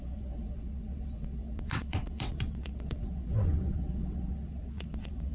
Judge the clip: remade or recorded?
remade